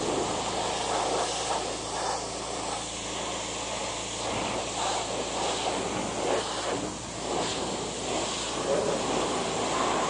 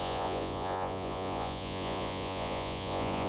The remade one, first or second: second